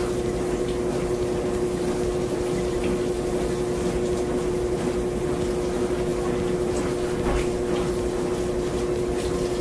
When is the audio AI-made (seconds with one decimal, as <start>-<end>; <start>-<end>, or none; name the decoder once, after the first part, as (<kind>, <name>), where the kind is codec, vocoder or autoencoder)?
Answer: none